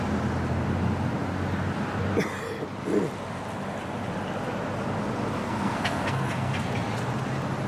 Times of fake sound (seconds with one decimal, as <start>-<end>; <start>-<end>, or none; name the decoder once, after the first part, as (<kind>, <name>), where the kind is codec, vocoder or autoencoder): 5.4-6.7 (codec, SNAC)

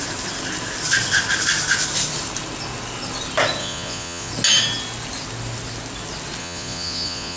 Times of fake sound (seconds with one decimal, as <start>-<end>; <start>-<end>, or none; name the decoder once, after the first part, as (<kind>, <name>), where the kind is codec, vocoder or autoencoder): 3.6-4.3 (vocoder, Vocos); 6.4-7.4

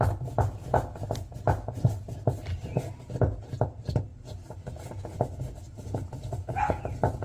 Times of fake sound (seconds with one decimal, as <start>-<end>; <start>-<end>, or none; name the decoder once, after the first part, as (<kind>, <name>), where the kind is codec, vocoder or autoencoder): none

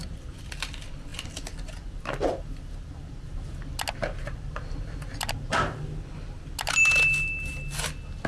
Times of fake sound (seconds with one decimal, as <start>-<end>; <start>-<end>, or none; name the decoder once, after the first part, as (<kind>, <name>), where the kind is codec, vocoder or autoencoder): none

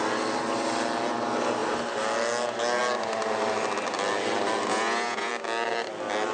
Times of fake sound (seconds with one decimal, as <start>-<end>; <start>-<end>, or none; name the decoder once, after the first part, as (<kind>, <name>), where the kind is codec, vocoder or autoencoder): 4.7-5.3 (vocoder, Vocos)

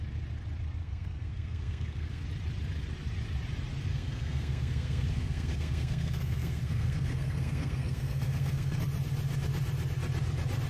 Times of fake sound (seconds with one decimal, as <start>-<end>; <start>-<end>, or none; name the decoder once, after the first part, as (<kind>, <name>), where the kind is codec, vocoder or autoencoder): 0.8-2.2 (codec, SNAC); 3.9-8.8

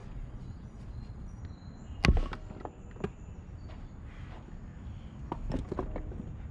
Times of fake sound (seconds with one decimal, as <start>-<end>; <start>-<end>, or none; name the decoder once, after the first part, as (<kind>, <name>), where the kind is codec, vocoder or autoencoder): 0.0-1.4 (vocoder, Vocos)